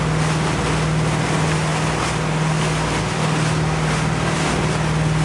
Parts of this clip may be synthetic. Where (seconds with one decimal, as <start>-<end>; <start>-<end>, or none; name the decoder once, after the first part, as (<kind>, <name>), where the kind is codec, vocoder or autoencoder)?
none